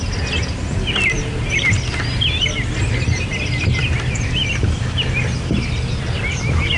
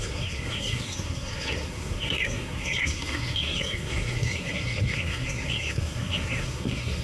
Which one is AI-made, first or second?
second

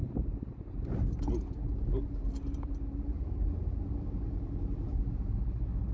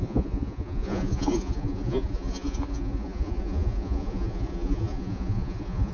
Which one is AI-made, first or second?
second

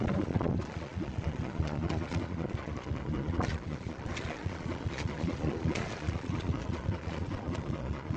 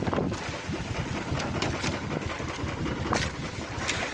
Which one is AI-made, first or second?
first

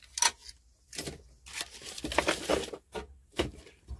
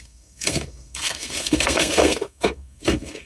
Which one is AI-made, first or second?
second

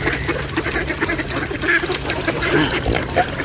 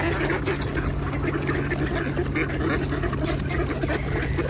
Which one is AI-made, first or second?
first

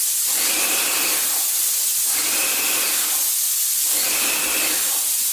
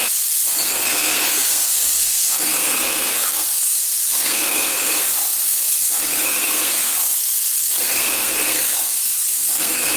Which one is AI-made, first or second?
second